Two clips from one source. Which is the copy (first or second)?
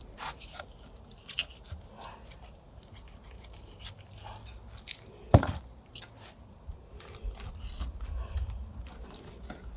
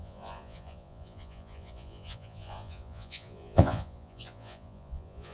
second